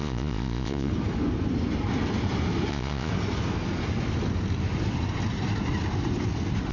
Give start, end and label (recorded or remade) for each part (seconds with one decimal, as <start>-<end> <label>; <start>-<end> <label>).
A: 0.0-0.9 remade; 0.9-2.7 recorded; 2.7-3.1 remade; 3.1-6.7 recorded